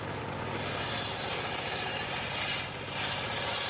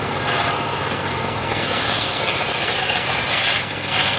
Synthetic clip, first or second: second